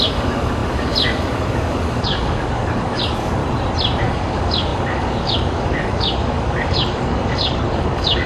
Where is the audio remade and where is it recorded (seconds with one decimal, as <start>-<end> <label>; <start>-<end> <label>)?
0.0-3.4 remade; 3.4-4.0 recorded; 4.0-8.3 remade